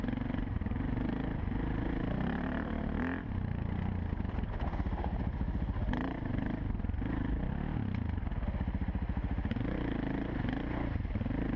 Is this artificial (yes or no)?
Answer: no